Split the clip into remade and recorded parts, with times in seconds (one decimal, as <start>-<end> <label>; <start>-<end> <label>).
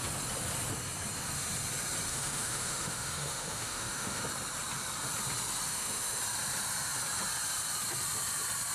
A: 0.0-2.1 recorded; 2.1-4.2 remade; 4.2-5.7 recorded; 5.7-6.2 remade; 6.2-8.7 recorded